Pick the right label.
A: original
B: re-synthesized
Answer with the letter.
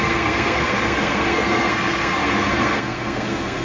B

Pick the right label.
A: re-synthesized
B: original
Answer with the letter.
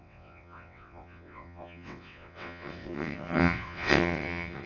A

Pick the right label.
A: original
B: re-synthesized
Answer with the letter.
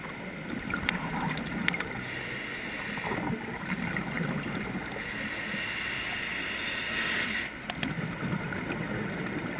A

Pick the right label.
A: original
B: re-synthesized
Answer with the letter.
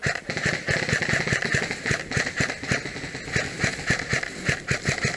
A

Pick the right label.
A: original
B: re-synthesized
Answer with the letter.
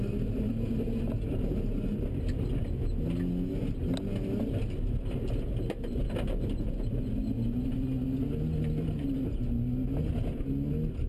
A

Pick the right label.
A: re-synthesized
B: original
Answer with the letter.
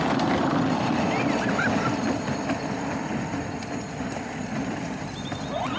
B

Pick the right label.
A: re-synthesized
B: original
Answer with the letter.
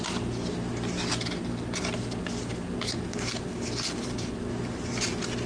B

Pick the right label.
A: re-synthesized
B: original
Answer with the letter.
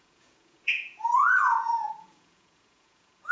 A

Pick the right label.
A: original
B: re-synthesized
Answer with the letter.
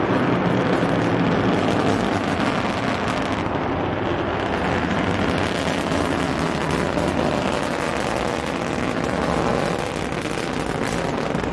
A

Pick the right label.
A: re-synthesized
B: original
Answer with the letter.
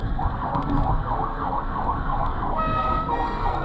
A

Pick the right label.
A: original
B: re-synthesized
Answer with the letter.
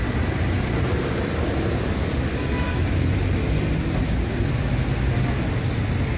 A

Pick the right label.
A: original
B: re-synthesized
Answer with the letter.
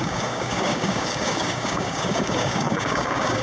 B